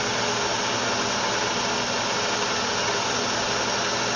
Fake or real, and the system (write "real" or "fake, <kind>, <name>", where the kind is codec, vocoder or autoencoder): real